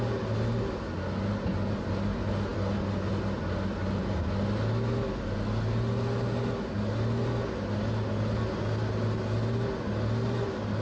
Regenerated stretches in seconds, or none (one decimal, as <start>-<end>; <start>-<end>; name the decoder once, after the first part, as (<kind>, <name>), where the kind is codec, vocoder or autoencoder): none